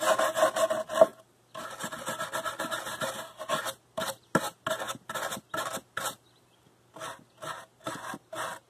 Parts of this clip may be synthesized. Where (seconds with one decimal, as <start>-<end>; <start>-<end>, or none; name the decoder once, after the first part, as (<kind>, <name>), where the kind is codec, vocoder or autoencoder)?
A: none